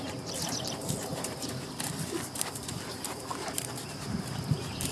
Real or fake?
fake